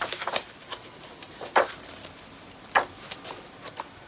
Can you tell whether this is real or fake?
real